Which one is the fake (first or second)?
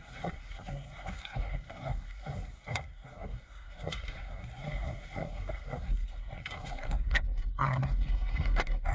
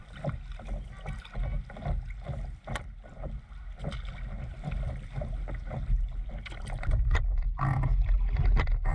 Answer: first